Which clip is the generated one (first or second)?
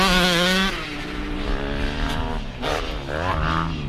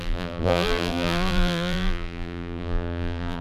second